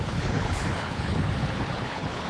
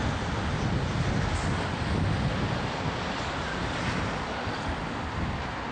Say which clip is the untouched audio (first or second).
second